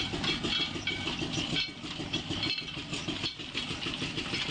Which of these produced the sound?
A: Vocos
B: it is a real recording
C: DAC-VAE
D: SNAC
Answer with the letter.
B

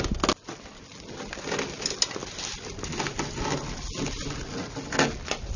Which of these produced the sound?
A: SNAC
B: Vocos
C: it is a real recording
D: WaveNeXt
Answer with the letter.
C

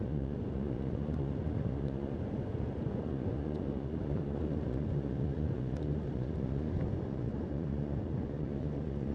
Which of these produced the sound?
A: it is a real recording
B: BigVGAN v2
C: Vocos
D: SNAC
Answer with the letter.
C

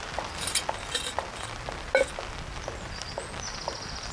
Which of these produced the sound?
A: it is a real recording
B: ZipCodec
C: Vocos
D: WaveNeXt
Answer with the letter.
A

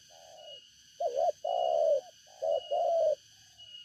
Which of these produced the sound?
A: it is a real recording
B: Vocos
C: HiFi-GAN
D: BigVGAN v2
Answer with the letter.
A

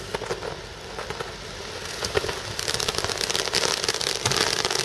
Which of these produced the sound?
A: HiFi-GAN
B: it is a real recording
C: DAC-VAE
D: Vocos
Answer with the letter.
B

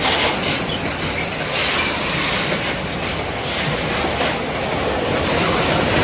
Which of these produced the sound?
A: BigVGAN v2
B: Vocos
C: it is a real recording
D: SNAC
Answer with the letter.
C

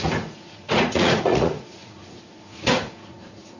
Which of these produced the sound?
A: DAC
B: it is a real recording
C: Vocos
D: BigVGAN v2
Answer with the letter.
C